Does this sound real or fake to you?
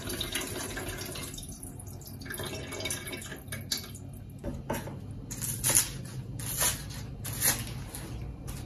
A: real